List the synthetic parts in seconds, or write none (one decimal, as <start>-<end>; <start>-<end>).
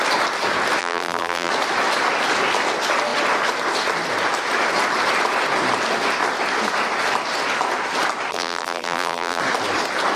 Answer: 0.8-1.5; 8.3-9.4